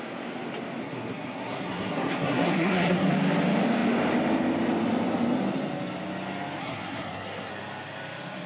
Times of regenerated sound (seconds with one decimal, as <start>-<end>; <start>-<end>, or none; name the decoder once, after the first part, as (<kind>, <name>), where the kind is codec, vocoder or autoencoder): 0.8-3.1 (codec, SNAC); 6.6-7.5